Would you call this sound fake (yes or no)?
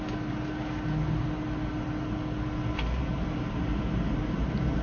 no